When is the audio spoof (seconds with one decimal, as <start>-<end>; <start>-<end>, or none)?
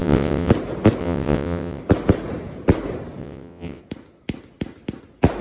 0.0-0.5; 1.0-1.8; 3.2-3.8